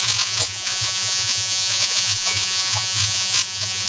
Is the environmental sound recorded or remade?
remade